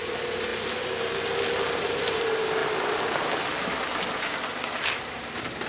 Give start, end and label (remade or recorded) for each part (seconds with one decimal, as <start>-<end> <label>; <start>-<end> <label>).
0.0-5.7 recorded